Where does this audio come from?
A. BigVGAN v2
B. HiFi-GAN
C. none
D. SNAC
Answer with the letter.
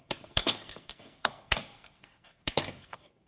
D